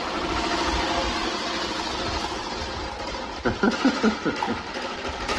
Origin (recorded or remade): recorded